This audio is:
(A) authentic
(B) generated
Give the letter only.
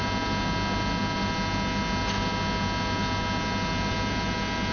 A